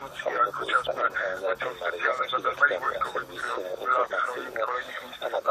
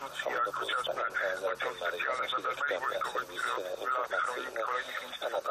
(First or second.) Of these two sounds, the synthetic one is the first